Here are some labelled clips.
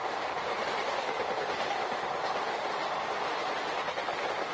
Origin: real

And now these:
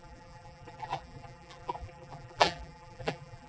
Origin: fake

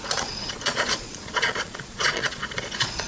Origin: fake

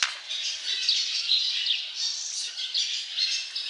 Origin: real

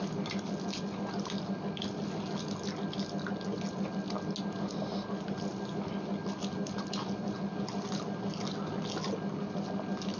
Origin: real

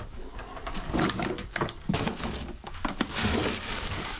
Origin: fake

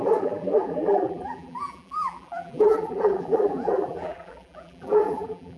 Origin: fake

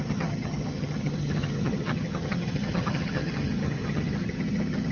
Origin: fake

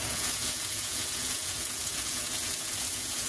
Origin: fake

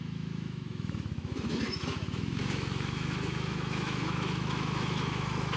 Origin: fake